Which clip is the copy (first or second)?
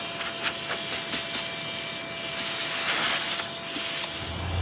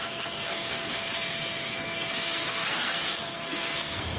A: second